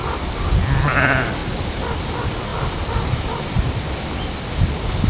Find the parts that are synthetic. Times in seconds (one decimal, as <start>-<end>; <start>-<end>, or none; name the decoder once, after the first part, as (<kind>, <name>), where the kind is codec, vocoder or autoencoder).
2.5-4.1 (vocoder, BigVGAN v2)